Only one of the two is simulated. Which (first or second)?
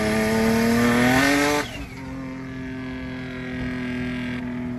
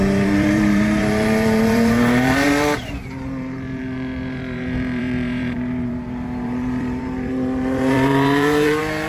second